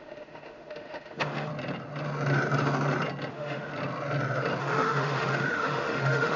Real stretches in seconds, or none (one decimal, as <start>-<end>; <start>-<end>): 1.5-3.3; 3.7-4.6